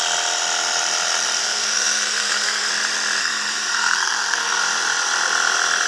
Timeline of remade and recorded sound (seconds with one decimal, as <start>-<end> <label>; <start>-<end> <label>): 0.0-1.4 recorded; 1.4-2.7 remade; 2.7-3.2 recorded; 3.2-4.6 remade; 4.6-5.9 recorded